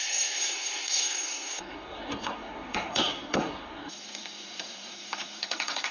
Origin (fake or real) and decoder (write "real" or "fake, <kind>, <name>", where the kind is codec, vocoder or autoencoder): fake, codec, SNAC